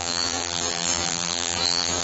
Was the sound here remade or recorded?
remade